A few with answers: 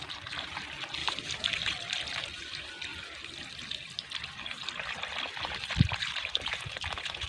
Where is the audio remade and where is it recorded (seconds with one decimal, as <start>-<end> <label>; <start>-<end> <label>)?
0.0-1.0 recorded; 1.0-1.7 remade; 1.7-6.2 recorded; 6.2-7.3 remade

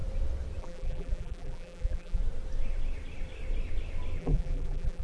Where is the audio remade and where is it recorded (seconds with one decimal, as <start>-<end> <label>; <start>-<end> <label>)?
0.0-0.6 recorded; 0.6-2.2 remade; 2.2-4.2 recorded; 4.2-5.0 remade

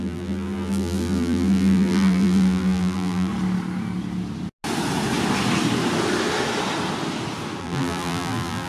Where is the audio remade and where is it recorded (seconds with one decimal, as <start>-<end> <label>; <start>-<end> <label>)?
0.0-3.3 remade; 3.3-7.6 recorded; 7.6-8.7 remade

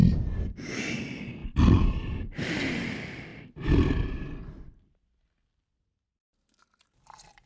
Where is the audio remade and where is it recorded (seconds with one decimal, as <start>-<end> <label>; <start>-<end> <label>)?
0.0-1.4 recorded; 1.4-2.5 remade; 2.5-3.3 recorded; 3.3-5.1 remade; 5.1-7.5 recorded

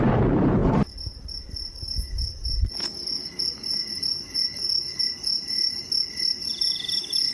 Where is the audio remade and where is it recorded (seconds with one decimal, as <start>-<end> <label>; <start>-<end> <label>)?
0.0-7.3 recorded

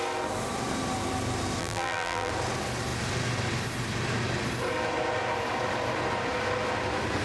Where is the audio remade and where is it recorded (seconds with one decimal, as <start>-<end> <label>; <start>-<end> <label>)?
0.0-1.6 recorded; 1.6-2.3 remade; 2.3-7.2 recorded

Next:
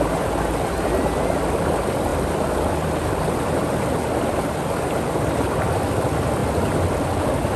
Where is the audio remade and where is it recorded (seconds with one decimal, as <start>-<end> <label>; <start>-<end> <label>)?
0.0-7.6 recorded